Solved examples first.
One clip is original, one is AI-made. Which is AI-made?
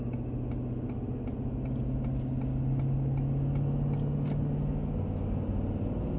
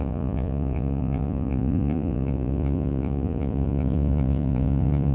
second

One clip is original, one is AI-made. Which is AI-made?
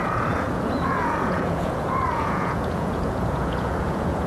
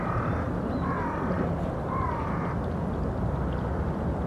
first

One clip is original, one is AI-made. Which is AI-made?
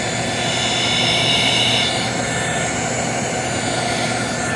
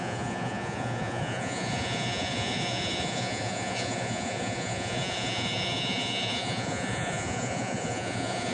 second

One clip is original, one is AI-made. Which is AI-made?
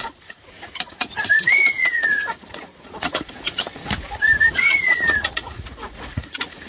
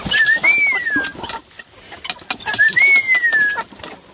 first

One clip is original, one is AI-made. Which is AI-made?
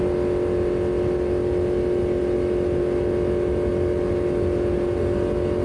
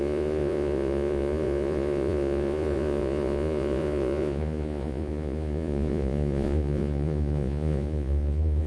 second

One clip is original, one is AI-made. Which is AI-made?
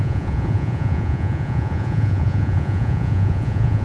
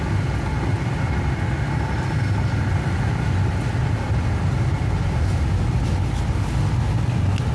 first